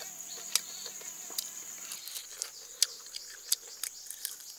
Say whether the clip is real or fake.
real